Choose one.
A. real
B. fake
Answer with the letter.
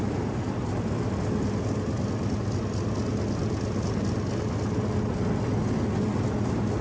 A